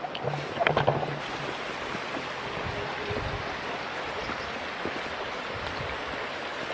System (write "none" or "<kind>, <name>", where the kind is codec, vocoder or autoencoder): none